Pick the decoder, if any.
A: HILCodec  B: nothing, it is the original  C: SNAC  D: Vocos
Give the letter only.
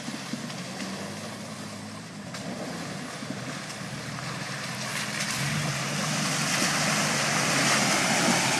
B